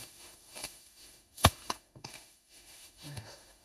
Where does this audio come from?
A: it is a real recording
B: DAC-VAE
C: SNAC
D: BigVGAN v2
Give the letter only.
B